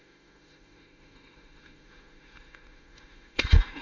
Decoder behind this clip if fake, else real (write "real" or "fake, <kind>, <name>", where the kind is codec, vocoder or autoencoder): fake, autoencoder, DAC-VAE